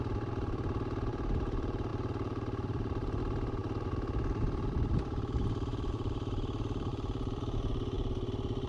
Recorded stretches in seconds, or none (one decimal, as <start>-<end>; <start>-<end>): 0.0-1.9; 3.2-5.7; 7.3-8.7